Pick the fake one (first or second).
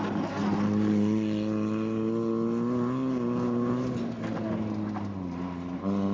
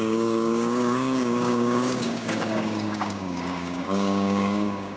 second